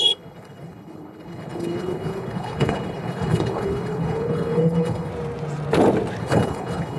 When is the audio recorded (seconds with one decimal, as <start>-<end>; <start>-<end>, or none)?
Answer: 5.1-6.2